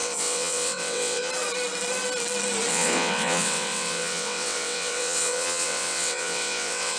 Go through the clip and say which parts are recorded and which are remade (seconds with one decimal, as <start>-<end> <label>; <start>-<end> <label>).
0.0-1.3 remade; 1.3-2.7 recorded; 2.7-7.0 remade